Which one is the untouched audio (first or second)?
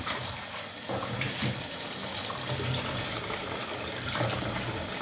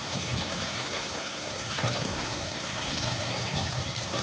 first